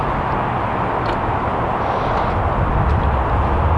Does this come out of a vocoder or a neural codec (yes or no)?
no